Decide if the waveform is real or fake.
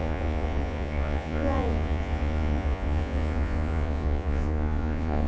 fake